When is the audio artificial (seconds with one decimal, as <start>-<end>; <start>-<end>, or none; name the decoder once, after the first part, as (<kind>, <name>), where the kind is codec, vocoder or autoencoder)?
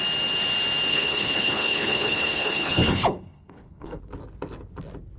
0.9-4.0 (codec, HILCodec)